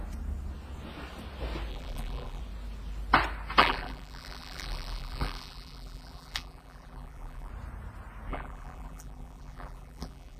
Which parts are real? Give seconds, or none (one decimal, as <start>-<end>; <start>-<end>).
0.0-1.7; 2.4-3.6; 7.5-8.3